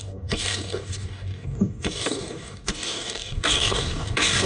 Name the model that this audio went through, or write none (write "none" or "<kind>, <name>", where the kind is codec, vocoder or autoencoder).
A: codec, DAC